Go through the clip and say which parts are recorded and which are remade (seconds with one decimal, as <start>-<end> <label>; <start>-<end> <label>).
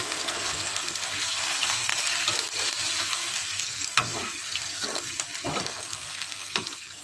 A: 0.0-1.9 remade; 1.9-3.0 recorded; 3.0-5.1 remade; 5.1-5.6 recorded; 5.6-7.0 remade